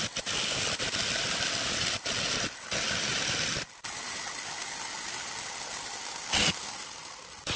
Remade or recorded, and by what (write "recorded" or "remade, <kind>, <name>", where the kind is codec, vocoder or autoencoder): recorded